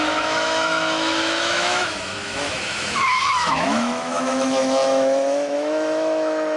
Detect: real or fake fake